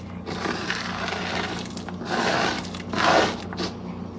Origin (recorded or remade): recorded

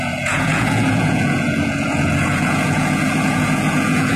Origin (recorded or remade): remade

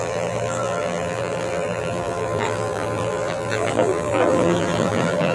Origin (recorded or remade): remade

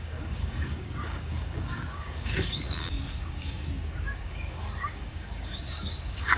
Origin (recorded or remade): remade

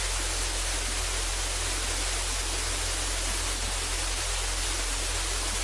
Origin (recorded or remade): recorded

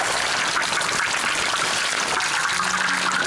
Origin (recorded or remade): recorded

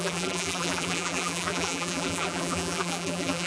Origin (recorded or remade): remade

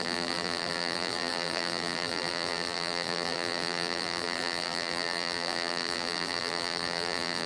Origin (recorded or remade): remade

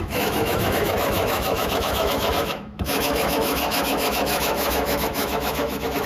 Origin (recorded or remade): remade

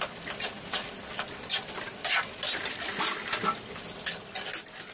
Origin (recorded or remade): recorded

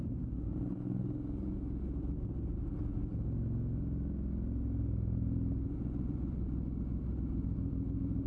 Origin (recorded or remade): recorded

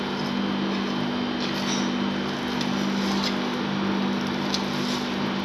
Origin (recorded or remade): recorded